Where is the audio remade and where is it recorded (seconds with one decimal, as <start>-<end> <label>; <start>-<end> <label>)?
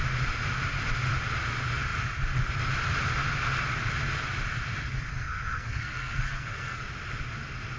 0.0-5.1 recorded; 5.1-6.9 remade; 6.9-7.8 recorded